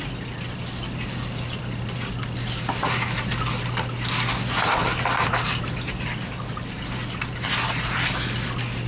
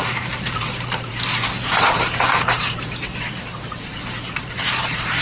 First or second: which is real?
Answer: first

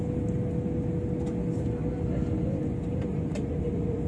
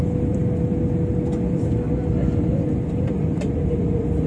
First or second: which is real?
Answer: first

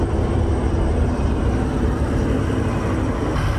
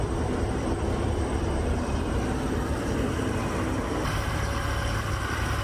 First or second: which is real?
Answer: first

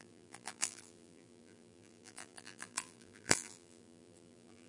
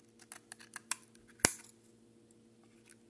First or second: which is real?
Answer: second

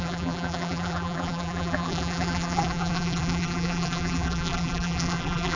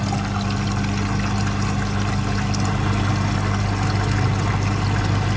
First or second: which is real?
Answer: second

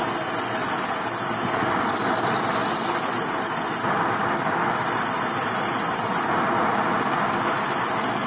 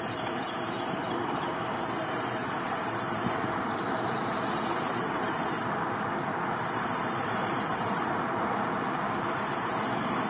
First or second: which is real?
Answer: first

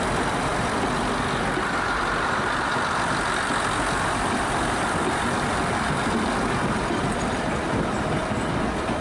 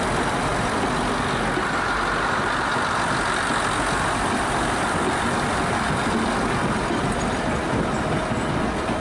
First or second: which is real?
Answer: second